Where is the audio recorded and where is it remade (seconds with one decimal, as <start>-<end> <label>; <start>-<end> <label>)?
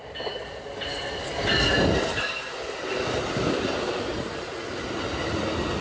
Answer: 0.0-5.8 recorded